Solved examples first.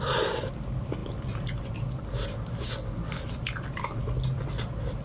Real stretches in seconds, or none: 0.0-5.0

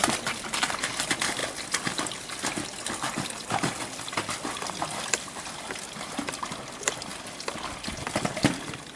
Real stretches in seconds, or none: 0.0-9.0

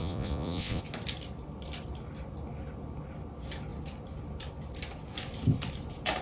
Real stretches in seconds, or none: 0.8-6.2

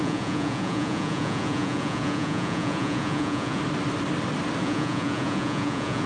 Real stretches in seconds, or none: 3.6-4.6

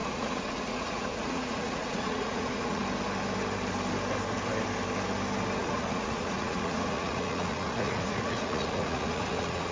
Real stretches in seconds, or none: 2.8-5.6